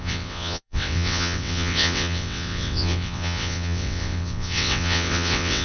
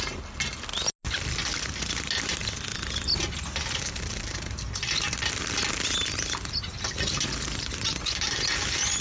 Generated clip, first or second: first